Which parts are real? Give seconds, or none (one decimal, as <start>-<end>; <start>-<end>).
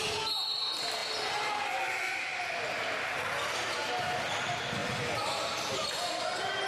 0.0-6.7